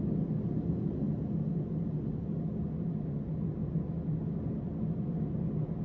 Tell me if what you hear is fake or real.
real